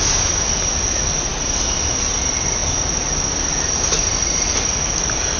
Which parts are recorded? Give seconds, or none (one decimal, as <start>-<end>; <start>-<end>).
0.0-5.4